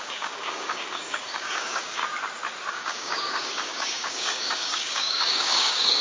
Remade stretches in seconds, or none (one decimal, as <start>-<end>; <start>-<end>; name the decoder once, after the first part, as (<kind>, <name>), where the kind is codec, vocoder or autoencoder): 0.0-2.0 (codec, DAC); 2.7-6.0